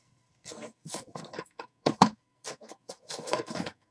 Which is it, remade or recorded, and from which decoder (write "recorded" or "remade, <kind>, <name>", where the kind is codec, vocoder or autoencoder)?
remade, codec, SNAC